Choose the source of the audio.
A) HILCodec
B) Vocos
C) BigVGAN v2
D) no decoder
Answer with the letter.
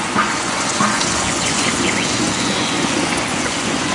B